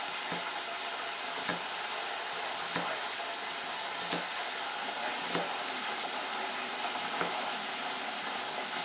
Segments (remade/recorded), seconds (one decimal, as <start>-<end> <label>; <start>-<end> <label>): 0.0-8.8 recorded